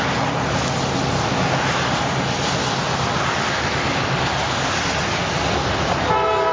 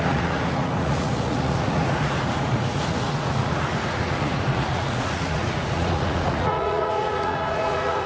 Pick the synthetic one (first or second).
second